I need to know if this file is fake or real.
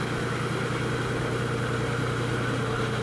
real